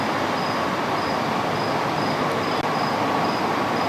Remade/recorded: recorded